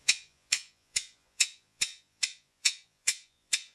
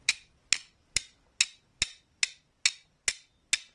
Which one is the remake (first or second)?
first